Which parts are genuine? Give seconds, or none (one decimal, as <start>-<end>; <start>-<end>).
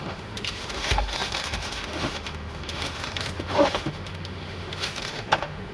none